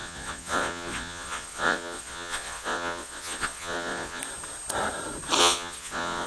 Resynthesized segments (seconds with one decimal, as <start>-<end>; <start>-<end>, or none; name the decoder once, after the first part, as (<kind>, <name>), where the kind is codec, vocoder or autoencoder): 0.0-4.2 (vocoder, Vocos); 5.4-6.3